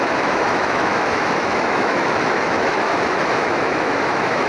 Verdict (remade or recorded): remade